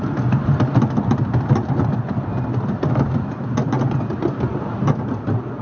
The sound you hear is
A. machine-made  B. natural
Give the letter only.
B